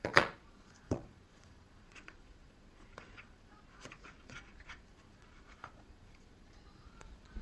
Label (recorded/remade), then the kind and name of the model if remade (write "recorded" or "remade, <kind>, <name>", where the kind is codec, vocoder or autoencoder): remade, vocoder, Vocos